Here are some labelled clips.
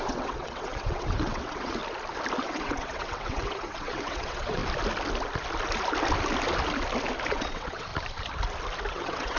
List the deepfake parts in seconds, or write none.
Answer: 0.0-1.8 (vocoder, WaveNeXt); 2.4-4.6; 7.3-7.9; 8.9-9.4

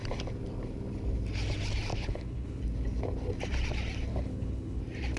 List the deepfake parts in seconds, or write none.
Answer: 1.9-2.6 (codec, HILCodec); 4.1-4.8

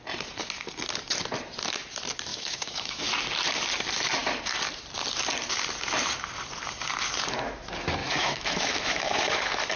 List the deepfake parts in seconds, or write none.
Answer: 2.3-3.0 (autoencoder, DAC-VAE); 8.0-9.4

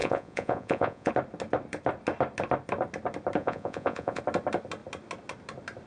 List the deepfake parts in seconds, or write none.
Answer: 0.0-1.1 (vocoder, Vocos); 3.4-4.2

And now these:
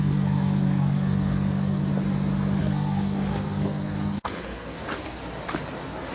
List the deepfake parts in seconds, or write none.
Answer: 0.0-1.9 (codec, SNAC); 2.6-5.2

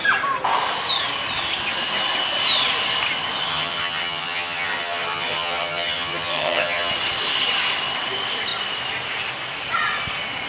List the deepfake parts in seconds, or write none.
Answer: 3.5-6.9 (vocoder, HiFi-GAN)

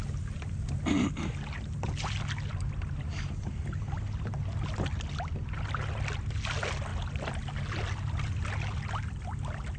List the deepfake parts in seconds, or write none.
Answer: none